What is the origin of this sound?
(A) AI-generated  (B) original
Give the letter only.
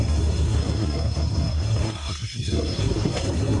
A